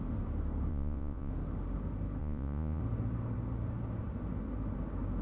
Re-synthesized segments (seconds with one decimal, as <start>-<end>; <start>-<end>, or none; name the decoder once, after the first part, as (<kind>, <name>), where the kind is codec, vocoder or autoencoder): 0.7-1.3 (vocoder, Vocos); 2.2-2.8